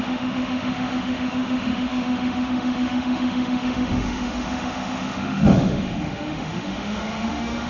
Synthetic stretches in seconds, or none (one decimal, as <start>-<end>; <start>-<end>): 0.0-7.7